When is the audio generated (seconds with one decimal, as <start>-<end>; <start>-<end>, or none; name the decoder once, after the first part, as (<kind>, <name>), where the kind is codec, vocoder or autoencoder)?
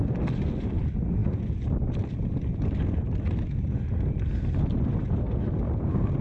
none